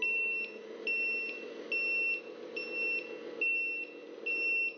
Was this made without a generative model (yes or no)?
yes